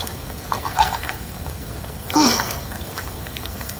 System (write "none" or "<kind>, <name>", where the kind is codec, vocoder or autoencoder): codec, SNAC